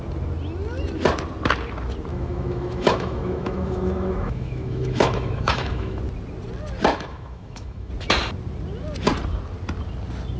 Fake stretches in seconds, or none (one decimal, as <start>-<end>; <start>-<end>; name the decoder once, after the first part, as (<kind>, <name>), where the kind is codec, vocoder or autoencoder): 2.1-6.0 (autoencoder, DAC-VAE); 6.9-7.9